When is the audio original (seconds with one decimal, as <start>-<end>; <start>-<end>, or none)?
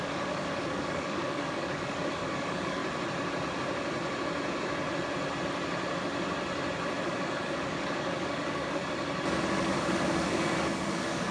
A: 2.8-7.0; 8.8-9.5